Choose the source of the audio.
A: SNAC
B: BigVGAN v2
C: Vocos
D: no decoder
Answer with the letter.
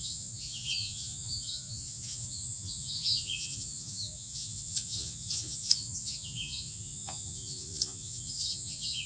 C